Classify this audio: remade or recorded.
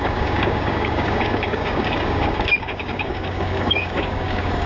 remade